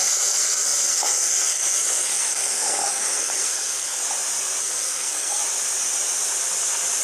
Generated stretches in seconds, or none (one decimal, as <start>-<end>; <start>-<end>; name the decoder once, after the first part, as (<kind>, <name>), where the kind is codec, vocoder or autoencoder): 0.0-4.0 (codec, SNAC); 4.6-5.4

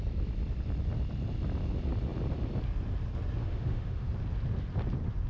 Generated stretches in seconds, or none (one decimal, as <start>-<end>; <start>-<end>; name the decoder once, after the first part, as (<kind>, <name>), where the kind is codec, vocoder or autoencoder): 3.4-4.1 (autoencoder, DAC-VAE)

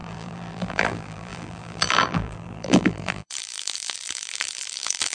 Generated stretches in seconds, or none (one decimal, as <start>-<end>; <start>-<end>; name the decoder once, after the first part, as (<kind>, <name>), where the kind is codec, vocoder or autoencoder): 0.0-5.1 (vocoder, BigVGAN v2)

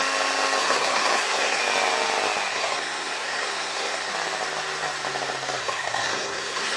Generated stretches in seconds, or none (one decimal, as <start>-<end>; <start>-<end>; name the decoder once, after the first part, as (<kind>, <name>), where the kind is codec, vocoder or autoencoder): 0.6-1.6 (codec, SNAC); 2.5-4.1; 5.6-6.8

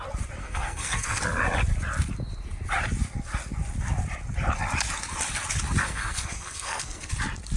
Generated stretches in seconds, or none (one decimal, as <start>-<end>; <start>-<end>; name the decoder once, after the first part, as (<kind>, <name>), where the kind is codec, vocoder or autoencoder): 0.4-1.2 (codec, SNAC); 5.8-7.1

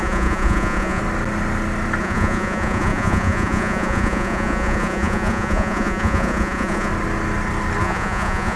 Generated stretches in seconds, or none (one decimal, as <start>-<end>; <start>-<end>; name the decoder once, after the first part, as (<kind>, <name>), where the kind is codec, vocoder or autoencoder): 0.0-1.0 (vocoder, Vocos); 2.0-6.9; 7.8-8.6